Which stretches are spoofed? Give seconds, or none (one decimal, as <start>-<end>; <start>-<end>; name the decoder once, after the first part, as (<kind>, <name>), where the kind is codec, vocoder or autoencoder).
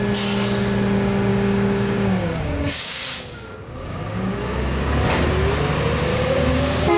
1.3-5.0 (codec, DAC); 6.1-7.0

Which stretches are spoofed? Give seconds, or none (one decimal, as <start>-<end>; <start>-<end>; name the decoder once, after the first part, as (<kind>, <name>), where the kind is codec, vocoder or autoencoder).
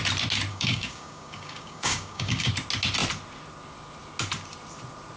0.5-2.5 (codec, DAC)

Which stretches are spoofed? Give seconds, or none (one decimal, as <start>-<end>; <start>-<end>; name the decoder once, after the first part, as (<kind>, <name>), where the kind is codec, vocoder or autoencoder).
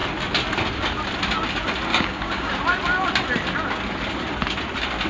1.9-2.5 (codec, DAC)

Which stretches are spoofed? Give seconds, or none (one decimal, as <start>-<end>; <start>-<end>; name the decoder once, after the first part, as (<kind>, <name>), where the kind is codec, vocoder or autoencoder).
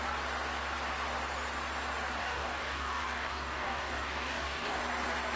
2.2-4.8 (codec, DAC)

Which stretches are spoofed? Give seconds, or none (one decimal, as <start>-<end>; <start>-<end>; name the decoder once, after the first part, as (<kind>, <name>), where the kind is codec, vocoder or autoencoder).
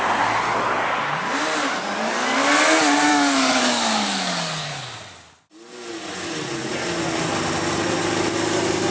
3.1-4.8 (codec, DAC)